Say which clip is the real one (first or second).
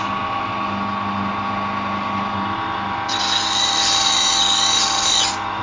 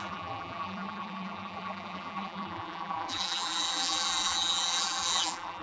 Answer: first